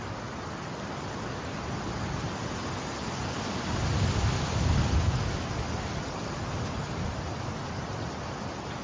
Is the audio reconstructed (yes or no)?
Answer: no